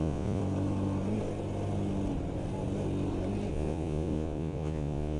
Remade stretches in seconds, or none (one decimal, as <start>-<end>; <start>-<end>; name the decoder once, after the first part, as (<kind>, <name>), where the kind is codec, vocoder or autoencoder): 0.0-0.4 (vocoder, Vocos); 3.5-5.2